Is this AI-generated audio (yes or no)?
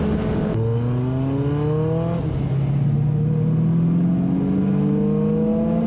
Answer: no